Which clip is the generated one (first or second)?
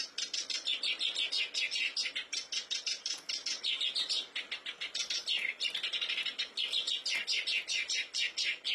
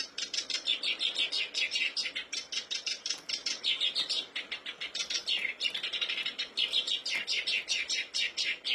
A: second